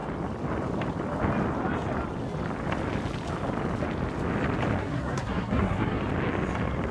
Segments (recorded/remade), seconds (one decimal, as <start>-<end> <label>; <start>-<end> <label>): 0.0-4.8 recorded; 4.8-6.0 remade; 6.0-6.9 recorded